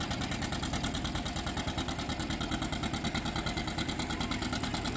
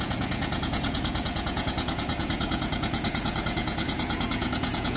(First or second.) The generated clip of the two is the second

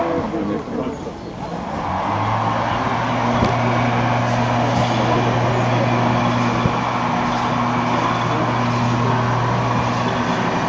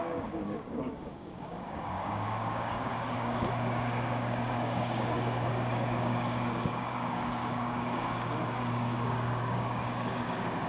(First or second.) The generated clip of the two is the second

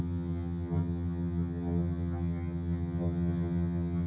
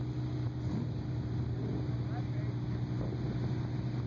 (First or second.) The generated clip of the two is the first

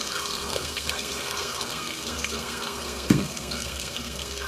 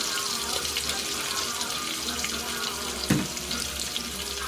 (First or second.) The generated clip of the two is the first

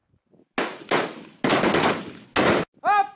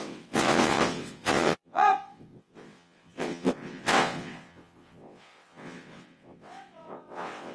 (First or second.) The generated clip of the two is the second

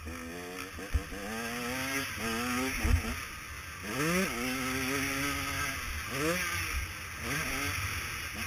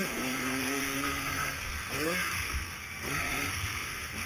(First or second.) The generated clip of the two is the second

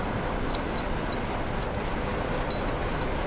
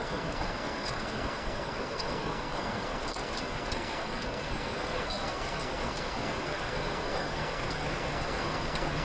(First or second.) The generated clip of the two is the second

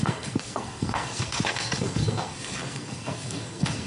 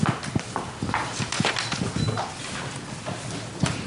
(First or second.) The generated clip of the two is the first